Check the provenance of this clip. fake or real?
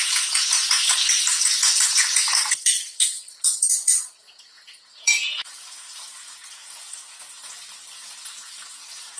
fake